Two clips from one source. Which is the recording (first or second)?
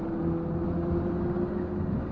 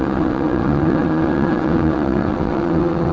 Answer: first